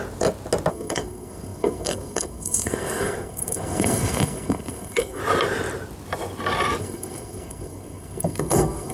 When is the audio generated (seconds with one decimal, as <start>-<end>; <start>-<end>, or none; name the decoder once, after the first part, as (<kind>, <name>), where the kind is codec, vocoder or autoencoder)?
0.7-5.2 (codec, SNAC); 6.8-8.9